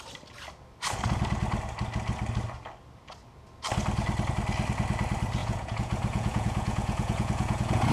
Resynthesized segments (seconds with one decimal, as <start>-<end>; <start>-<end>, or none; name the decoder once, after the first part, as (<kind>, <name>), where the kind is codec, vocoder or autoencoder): 5.4-7.9 (vocoder, Vocos)